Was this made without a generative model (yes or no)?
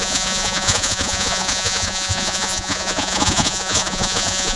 no